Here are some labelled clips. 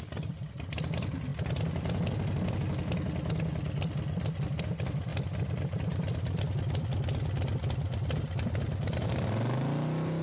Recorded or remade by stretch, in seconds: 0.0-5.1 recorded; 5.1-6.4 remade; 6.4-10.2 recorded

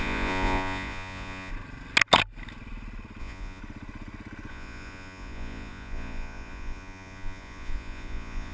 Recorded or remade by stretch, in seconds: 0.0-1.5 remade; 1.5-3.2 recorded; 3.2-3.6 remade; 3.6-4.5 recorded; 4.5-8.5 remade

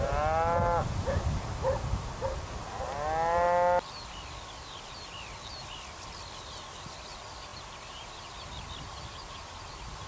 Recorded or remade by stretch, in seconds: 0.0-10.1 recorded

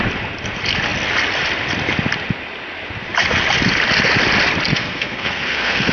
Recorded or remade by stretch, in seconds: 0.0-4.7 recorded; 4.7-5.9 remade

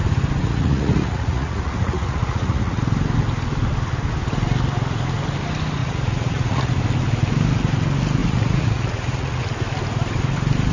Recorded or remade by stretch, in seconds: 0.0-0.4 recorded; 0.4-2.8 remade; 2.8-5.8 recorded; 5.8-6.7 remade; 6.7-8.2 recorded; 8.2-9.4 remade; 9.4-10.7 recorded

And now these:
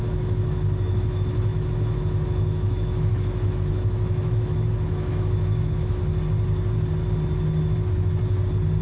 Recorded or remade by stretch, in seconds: 0.0-6.0 remade; 6.0-8.8 recorded

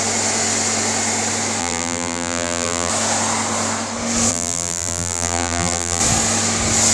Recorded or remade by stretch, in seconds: 0.0-1.6 recorded; 1.6-2.9 remade; 2.9-4.3 recorded; 4.3-6.0 remade; 6.0-6.9 recorded